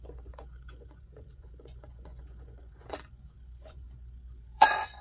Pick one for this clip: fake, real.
fake